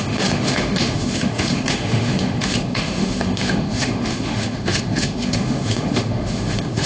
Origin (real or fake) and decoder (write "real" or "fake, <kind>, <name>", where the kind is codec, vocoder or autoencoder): fake, autoencoder, DAC-VAE